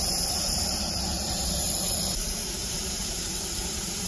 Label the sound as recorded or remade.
remade